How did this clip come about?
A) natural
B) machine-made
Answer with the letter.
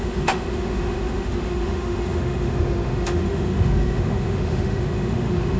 B